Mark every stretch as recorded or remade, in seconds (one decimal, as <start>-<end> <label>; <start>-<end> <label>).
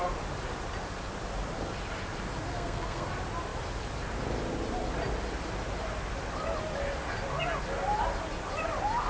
0.0-2.5 recorded; 2.5-3.1 remade; 3.1-9.1 recorded